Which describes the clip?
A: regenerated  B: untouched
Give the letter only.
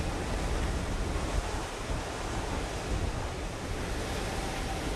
B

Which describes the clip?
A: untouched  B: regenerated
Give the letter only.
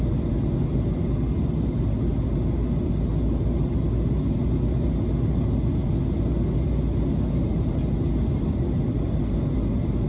A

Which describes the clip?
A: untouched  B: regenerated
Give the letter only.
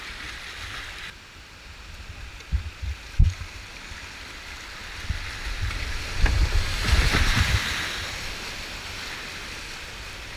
A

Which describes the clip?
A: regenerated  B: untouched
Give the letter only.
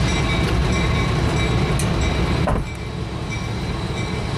B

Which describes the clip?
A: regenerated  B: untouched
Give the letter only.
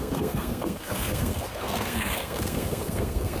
A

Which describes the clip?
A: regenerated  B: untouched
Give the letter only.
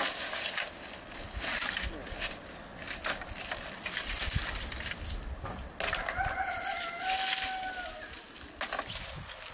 B